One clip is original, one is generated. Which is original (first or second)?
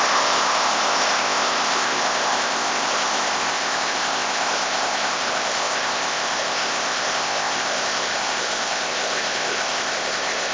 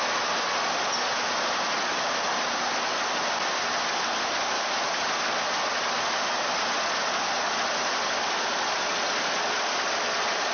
second